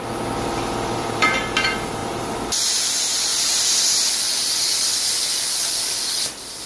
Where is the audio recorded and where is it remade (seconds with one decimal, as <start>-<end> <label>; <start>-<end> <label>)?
0.0-6.7 recorded